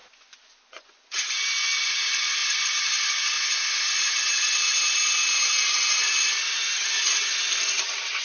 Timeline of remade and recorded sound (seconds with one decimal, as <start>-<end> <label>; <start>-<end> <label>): 0.0-1.2 remade; 1.2-8.2 recorded